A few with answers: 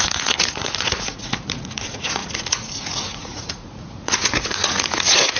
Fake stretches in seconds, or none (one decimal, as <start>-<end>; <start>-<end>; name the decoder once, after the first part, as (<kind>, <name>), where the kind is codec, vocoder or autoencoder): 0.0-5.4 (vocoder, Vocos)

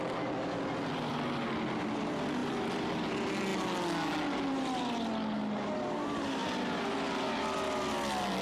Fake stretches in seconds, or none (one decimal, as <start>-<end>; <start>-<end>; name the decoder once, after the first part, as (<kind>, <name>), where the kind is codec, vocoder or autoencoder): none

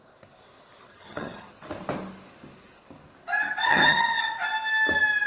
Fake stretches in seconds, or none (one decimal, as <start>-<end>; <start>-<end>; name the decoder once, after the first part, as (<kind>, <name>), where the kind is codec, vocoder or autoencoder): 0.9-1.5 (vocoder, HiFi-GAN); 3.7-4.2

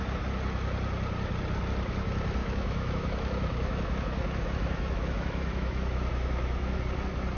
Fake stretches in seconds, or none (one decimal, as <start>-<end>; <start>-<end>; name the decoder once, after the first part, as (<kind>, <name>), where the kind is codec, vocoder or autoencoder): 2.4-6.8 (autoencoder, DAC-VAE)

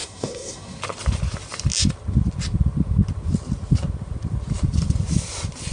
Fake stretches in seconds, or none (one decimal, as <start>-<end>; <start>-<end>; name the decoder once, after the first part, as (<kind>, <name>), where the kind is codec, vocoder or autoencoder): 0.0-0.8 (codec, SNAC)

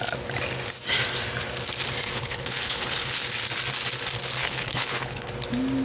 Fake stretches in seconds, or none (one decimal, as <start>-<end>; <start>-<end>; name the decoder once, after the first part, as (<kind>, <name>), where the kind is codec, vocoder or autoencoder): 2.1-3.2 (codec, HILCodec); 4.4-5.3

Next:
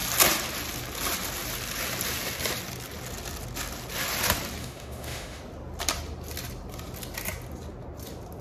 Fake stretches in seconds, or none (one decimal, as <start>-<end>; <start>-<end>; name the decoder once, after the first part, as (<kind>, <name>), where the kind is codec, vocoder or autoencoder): 4.6-5.4 (autoencoder, DAC-VAE)

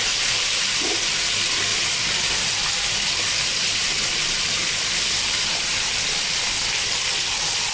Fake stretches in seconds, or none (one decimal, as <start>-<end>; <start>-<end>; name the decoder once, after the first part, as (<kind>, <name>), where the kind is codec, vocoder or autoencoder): 1.7-2.5 (vocoder, BigVGAN v2); 3.5-5.9